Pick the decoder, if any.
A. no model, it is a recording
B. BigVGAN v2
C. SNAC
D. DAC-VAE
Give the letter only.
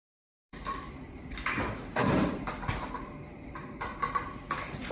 B